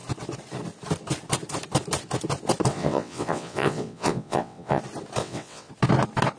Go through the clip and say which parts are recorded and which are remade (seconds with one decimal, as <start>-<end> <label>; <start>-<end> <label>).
0.0-2.7 recorded; 2.7-4.8 remade; 4.8-5.2 recorded; 5.2-5.7 remade; 5.7-6.4 recorded